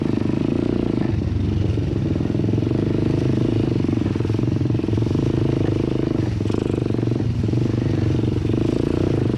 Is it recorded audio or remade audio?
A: recorded